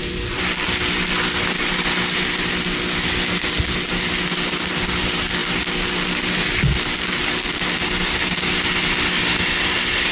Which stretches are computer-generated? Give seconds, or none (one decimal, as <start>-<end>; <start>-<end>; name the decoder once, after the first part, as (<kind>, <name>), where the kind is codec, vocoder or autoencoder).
none